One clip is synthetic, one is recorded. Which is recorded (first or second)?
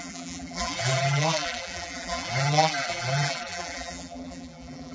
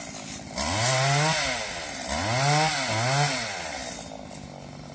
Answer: second